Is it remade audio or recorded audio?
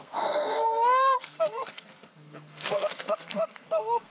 remade